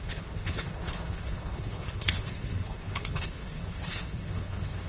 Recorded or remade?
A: remade